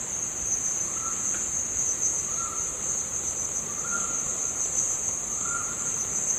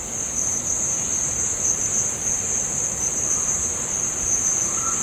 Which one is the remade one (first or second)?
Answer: first